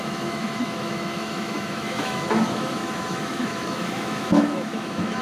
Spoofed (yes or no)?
yes